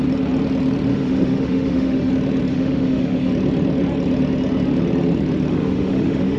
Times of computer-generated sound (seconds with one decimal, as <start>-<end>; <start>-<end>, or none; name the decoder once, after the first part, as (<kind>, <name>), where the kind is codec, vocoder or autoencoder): 0.9-2.1 (autoencoder, DAC-VAE); 2.5-3.3; 5.5-6.4